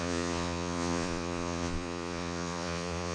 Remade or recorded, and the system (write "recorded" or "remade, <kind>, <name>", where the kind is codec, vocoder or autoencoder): remade, vocoder, Vocos